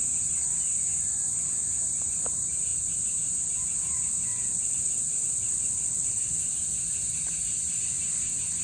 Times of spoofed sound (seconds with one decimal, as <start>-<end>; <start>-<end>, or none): 4.3-6.4